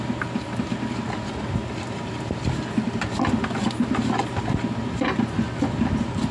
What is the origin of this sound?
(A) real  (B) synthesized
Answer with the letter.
A